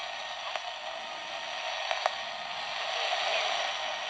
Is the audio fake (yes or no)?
no